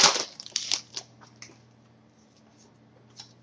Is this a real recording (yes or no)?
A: yes